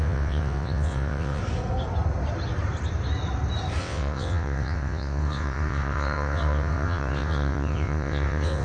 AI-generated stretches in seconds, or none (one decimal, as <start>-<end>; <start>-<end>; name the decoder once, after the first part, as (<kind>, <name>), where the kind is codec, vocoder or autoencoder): 0.0-1.4 (vocoder, WaveNeXt); 3.8-8.6